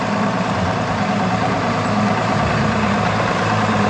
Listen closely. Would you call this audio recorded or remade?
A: remade